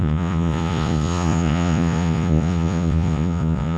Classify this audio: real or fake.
fake